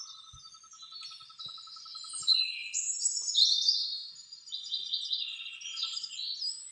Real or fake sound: real